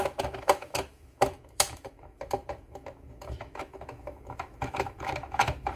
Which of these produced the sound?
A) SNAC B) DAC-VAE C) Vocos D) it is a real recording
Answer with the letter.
B